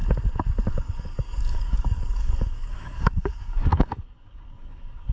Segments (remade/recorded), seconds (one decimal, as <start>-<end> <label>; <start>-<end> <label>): 0.0-0.7 recorded; 0.7-5.1 remade